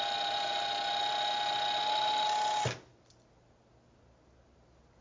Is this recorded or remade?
recorded